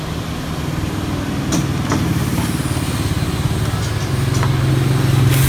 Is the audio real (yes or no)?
yes